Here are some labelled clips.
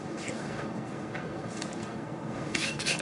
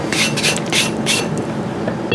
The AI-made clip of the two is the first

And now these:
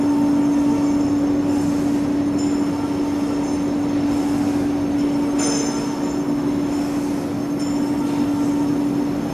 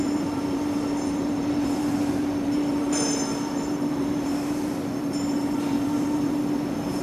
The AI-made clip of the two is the second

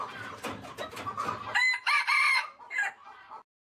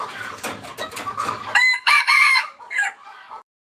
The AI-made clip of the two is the second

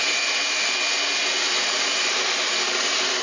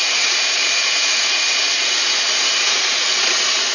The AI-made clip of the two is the second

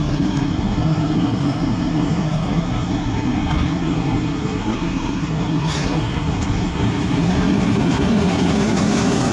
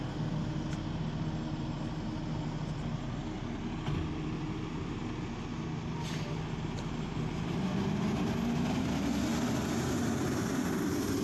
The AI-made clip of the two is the first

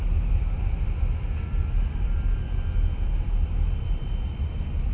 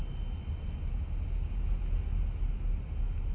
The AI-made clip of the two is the first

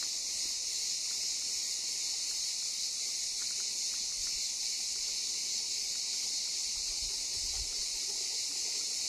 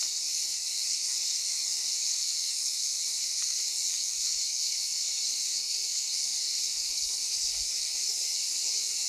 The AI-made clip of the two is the second